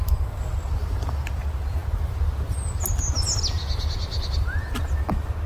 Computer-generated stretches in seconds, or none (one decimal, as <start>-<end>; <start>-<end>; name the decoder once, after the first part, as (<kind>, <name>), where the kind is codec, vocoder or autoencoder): none